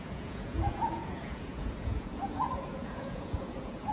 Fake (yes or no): yes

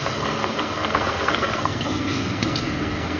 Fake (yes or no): yes